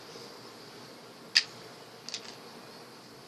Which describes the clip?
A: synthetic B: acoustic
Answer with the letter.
B